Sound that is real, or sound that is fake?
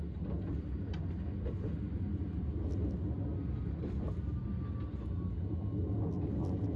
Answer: real